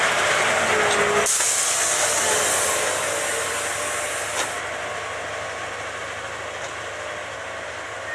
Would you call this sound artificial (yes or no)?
no